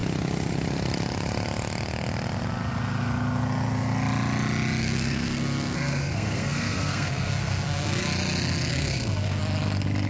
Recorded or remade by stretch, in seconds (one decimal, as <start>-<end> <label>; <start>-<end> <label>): 0.0-4.8 recorded; 4.8-8.0 remade; 8.0-8.7 recorded; 8.7-9.4 remade; 9.4-10.1 recorded